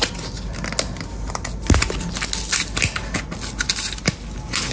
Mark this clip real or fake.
real